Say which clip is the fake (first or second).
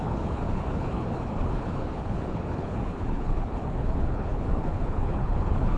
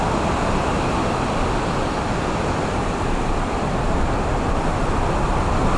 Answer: first